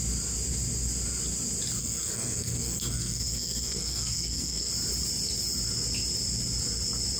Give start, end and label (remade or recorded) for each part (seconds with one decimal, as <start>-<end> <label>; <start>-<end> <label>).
0.0-1.8 recorded; 1.8-4.7 remade; 4.7-7.2 recorded